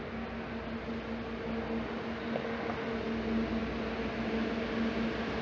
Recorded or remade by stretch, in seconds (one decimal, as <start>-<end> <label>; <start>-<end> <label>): 0.0-5.4 recorded